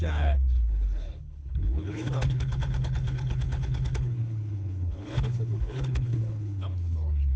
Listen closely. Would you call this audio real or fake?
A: fake